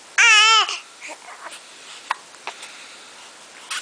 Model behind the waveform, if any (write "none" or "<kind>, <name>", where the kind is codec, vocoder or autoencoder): none